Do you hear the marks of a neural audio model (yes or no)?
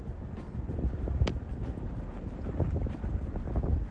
no